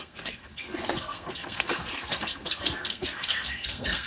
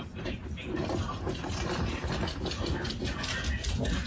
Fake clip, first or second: first